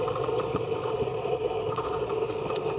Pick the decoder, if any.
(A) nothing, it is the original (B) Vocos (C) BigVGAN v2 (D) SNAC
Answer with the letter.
B